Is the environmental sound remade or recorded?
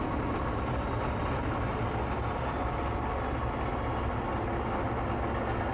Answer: recorded